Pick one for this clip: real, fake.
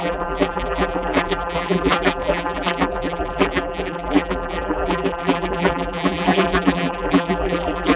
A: fake